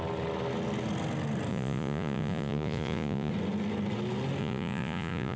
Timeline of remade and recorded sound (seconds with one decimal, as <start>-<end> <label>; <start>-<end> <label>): 0.0-1.5 recorded; 1.5-3.3 remade; 3.3-4.4 recorded; 4.4-5.4 remade